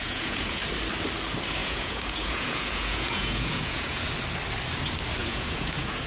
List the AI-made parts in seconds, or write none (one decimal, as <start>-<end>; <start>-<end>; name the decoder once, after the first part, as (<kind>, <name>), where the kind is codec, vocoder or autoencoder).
0.0-0.6 (vocoder, Vocos); 1.6-4.0; 5.2-6.1